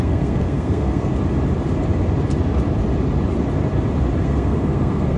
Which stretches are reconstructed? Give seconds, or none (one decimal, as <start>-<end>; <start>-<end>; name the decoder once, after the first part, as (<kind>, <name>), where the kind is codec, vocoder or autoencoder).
0.0-1.1 (codec, SNAC); 4.2-5.2